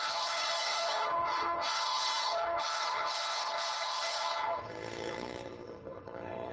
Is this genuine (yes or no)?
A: no